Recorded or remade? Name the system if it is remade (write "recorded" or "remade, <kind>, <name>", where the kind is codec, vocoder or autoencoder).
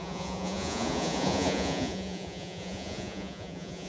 remade, vocoder, Vocos